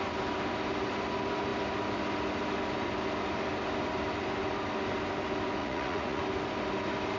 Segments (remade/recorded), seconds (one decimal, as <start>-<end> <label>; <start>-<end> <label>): 0.0-5.6 recorded; 5.6-6.2 remade; 6.2-7.2 recorded